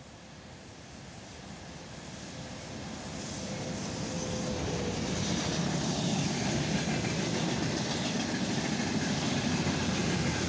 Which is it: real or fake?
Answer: real